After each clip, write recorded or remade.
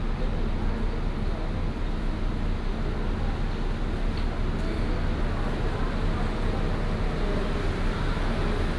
recorded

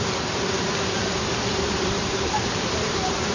remade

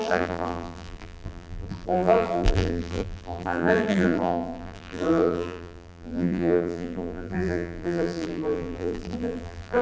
remade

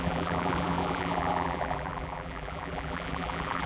remade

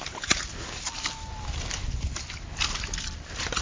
recorded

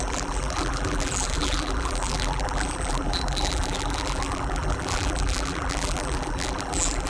remade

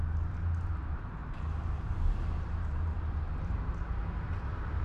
remade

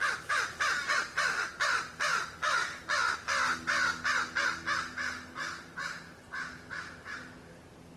recorded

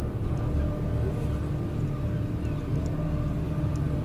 recorded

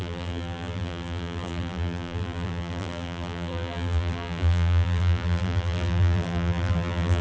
remade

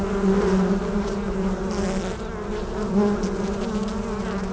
recorded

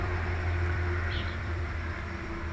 remade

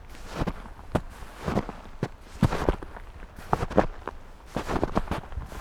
recorded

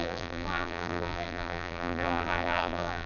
remade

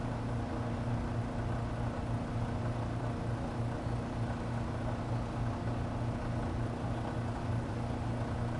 recorded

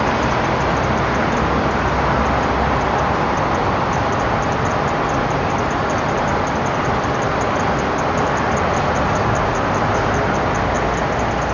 recorded